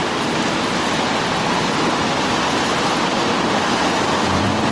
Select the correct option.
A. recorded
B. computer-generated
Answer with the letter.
A